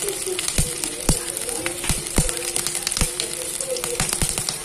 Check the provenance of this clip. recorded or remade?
remade